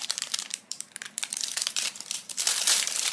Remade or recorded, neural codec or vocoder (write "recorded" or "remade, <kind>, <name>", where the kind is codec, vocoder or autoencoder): remade, vocoder, BigVGAN v2